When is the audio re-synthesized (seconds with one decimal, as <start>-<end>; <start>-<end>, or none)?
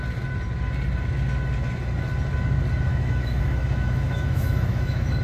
2.9-5.2